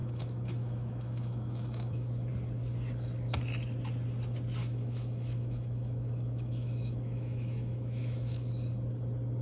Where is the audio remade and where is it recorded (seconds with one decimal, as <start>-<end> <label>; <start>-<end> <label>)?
0.0-2.3 remade; 2.3-4.6 recorded; 4.6-8.5 remade; 8.5-9.4 recorded